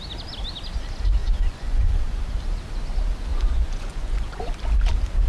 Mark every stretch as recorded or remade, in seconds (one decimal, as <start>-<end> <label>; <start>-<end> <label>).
0.0-1.2 recorded; 1.2-2.2 remade; 2.2-3.3 recorded; 3.3-4.5 remade; 4.5-5.3 recorded